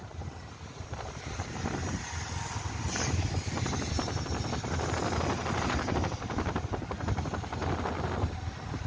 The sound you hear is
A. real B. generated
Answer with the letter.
A